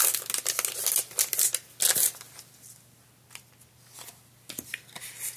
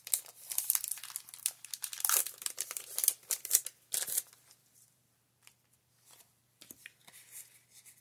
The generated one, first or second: second